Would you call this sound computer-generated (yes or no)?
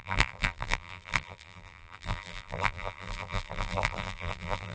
yes